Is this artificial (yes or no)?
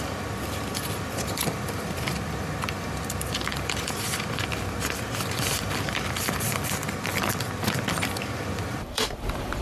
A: yes